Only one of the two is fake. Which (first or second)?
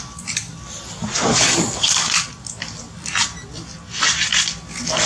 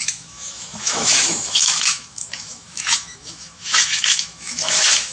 second